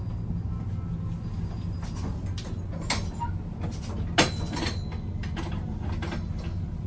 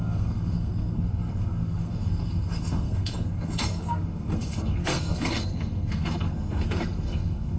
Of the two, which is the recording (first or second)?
first